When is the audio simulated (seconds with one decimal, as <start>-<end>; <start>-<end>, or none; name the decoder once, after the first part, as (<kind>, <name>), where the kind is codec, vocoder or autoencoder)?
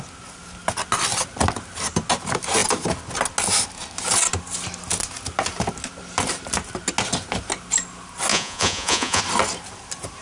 8.3-9.2 (vocoder, Vocos)